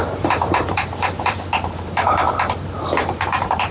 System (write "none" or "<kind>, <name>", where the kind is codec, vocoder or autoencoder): vocoder, BigVGAN v2